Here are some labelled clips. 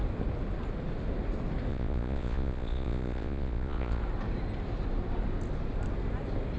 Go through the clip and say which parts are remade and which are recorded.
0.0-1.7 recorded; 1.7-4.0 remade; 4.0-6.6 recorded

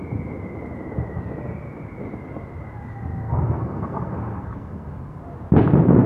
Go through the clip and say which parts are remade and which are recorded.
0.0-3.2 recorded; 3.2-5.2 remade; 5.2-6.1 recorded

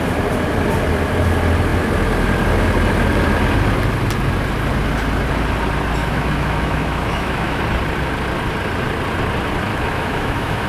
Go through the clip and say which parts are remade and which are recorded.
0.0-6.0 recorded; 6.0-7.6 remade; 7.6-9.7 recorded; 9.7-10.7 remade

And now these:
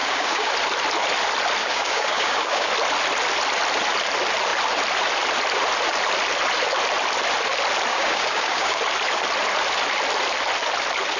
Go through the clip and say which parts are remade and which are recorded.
0.0-0.5 remade; 0.5-1.6 recorded; 1.6-2.7 remade; 2.7-7.9 recorded; 7.9-8.8 remade; 8.8-11.2 recorded

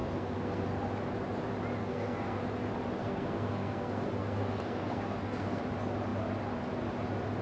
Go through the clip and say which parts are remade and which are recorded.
0.0-0.6 remade; 0.6-1.8 recorded; 1.8-2.4 remade; 2.4-3.0 recorded; 3.0-5.6 remade; 5.6-7.4 recorded

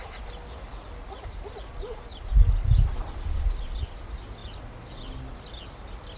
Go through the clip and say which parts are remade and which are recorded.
0.0-6.2 recorded

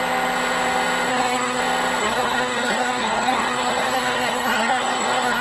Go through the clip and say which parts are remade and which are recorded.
0.0-1.1 recorded; 1.1-1.6 remade; 1.6-2.0 recorded; 2.0-5.4 remade